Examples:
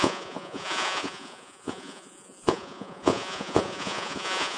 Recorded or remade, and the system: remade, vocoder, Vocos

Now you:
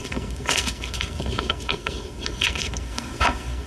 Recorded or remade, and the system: remade, codec, SNAC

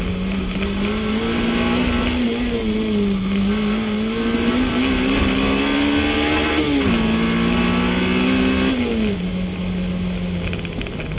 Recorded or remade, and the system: recorded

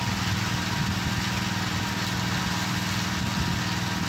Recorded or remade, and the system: recorded